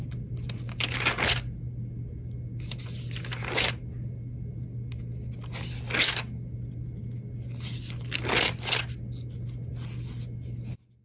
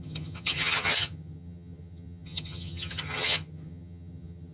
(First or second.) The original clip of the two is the first